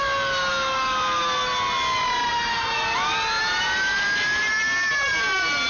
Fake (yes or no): no